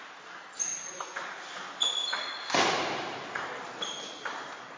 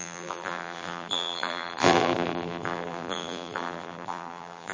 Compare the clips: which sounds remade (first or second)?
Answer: second